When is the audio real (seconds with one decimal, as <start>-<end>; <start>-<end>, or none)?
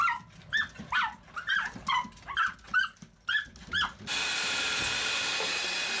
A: 0.0-6.0